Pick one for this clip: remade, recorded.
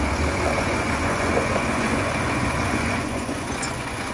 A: remade